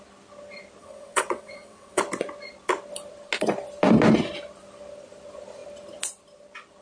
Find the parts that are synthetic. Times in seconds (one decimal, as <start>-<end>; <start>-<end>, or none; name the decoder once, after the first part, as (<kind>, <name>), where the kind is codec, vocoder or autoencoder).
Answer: 0.8-2.0 (vocoder, WaveNeXt)